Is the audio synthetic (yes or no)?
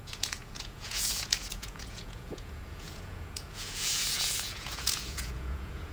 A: yes